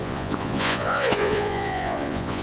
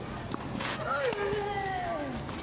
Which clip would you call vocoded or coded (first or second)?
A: first